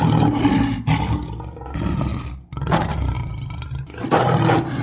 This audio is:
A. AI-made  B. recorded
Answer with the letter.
B